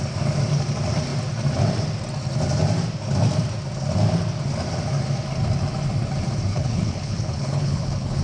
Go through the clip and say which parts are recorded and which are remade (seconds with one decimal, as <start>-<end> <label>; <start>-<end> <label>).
0.0-6.5 recorded; 6.5-8.2 remade